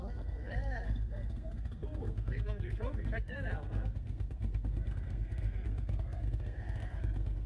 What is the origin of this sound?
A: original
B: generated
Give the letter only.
B